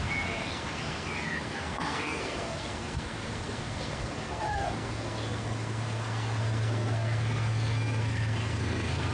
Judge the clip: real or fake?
fake